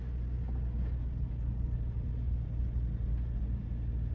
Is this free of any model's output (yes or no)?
yes